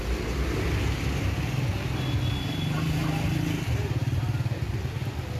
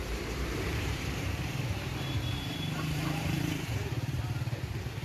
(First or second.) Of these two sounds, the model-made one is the second